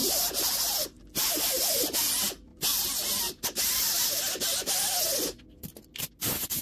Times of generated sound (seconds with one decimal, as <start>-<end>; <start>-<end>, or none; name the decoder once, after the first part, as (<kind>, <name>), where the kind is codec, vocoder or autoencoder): none